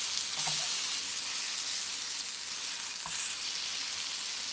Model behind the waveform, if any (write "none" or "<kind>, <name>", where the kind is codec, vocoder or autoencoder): none